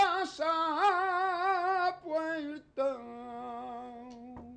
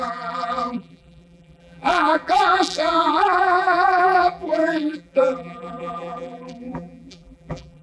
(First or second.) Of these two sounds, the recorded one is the first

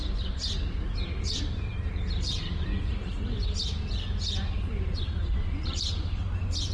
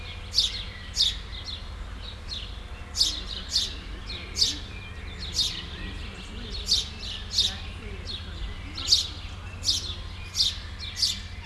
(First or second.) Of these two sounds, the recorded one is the second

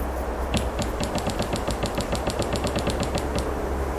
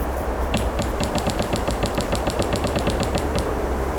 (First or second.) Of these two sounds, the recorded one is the first